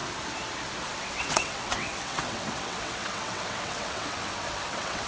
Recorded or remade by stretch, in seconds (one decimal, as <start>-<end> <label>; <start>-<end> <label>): 0.0-0.9 recorded; 0.9-5.1 remade